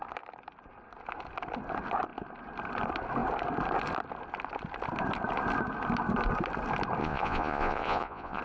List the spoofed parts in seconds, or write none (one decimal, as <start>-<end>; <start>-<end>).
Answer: 7.0-8.4